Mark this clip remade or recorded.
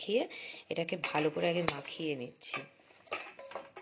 recorded